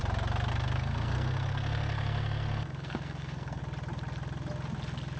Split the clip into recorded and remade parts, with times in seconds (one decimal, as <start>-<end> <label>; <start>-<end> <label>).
0.0-0.5 recorded; 0.5-3.6 remade; 3.6-5.2 recorded